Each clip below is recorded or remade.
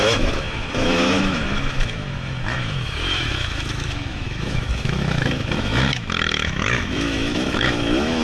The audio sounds remade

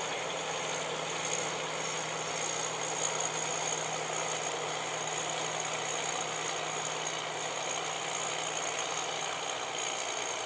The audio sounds recorded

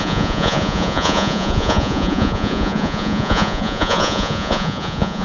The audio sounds remade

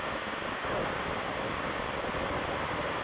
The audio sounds recorded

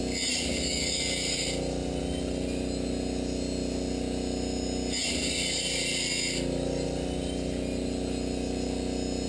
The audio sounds recorded